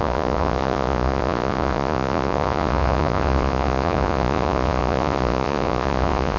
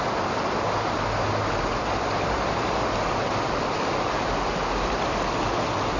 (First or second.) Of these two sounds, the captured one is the second